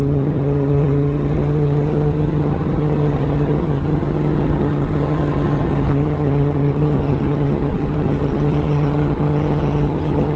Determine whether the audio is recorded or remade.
remade